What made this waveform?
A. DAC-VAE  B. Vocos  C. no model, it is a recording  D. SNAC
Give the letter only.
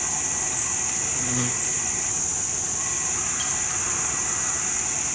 C